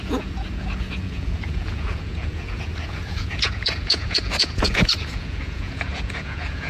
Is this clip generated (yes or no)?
yes